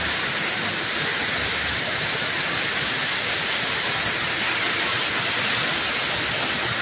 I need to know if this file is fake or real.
real